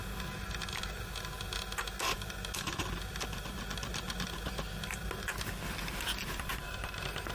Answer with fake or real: real